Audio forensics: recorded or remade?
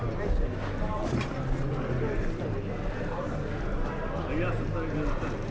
recorded